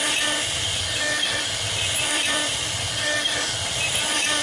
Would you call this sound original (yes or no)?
yes